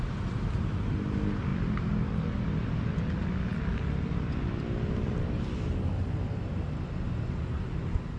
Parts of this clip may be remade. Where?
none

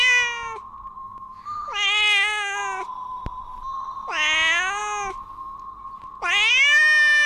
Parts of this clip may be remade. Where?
1.0-2.6 (autoencoder, DAC-VAE)

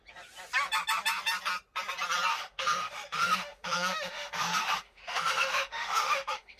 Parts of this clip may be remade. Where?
2.3-6.6 (autoencoder, DAC-VAE)

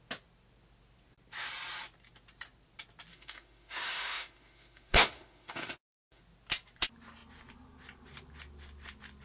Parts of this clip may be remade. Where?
3.1-6.2 (autoencoder, DAC-VAE)

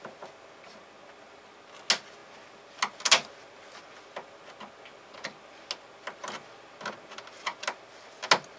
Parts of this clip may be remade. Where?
none

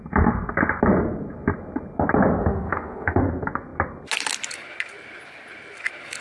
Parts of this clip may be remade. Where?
2.4-3.2 (autoencoder, DAC-VAE)

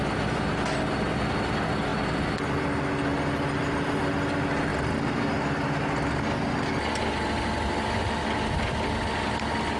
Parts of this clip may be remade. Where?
none